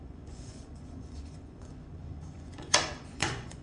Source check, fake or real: fake